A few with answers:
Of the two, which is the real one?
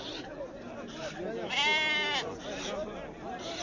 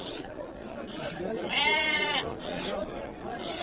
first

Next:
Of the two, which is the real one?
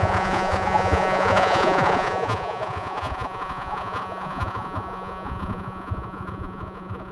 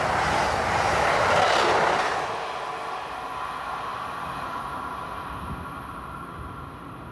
second